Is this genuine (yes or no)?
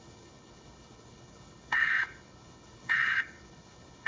no